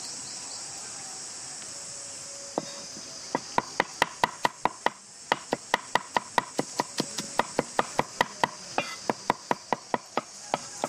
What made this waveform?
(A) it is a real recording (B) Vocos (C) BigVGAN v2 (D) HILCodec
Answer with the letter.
A